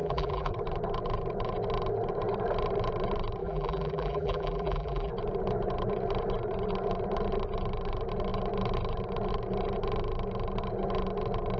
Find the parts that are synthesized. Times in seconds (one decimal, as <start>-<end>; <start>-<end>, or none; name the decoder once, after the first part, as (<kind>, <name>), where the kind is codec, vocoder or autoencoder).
0.0-0.5 (vocoder, BigVGAN v2); 3.4-5.1